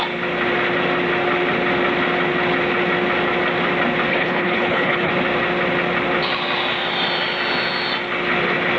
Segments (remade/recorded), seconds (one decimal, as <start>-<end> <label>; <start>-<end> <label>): 0.0-4.1 recorded; 4.1-5.1 remade; 5.1-8.8 recorded